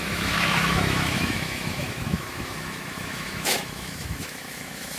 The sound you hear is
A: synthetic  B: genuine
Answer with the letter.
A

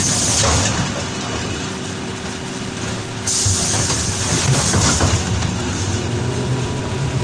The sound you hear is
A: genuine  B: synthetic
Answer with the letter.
A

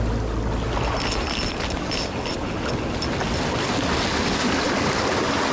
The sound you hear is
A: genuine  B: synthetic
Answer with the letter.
A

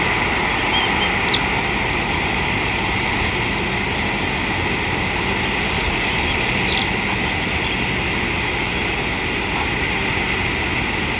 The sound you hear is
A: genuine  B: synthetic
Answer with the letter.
A